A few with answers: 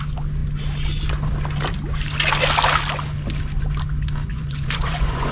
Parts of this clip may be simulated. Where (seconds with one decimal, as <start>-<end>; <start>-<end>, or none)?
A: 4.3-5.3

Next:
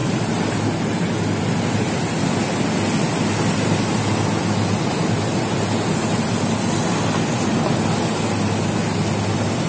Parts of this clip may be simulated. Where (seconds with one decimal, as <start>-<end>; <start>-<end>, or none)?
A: none

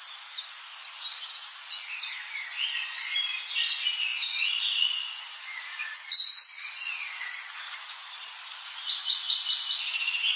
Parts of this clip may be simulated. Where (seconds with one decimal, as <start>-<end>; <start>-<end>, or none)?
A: 1.1-1.9; 4.1-7.4

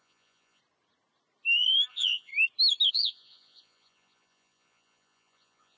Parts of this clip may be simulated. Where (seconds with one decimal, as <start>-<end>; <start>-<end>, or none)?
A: 0.0-0.6; 1.9-2.3; 2.9-5.8